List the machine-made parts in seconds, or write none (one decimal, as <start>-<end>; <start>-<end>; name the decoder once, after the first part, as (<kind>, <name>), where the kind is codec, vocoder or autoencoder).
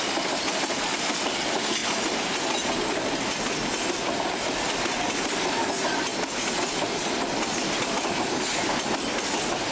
none